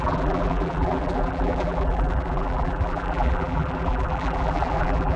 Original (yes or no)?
no